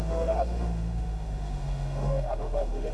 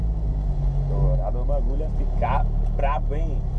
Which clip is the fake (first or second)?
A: first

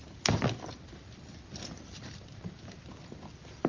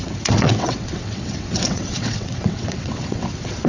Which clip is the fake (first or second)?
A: second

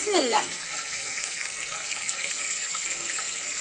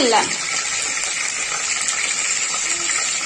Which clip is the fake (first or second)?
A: first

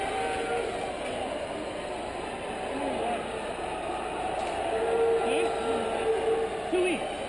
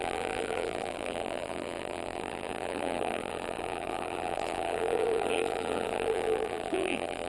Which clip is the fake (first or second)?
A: second